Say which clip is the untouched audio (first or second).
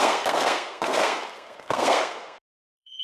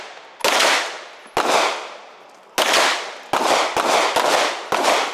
second